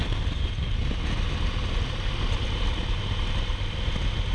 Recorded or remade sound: recorded